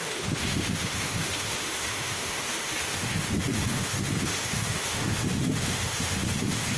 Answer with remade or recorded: remade